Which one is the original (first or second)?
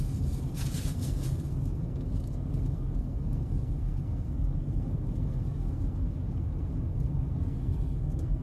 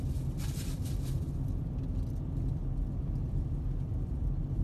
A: second